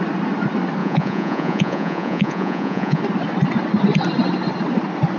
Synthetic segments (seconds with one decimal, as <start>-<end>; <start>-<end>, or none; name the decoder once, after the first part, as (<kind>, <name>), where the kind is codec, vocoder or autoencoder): 0.8-3.0 (vocoder, Vocos)

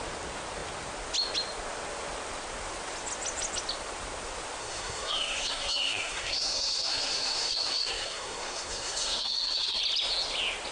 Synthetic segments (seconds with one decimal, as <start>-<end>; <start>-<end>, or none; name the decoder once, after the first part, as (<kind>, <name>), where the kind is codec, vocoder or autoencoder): 4.6-9.8 (codec, SNAC)

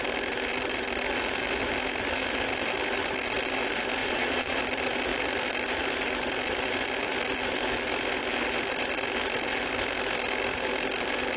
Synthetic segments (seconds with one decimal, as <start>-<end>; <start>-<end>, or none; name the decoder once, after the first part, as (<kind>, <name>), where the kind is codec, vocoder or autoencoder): 4.0-4.6 (vocoder, Vocos)

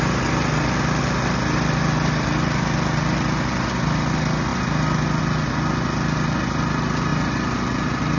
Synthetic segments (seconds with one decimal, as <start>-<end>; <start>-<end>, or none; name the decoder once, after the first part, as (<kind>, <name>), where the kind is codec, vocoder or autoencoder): none